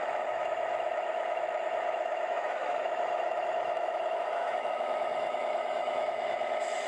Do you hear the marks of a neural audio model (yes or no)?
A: yes